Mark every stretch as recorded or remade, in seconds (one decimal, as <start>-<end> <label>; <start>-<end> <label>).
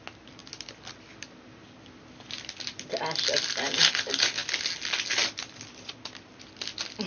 0.0-7.1 recorded